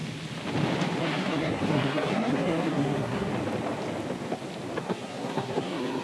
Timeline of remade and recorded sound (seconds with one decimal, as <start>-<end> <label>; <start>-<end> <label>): 0.0-1.0 recorded; 1.0-3.3 remade; 3.3-4.8 recorded; 4.8-6.0 remade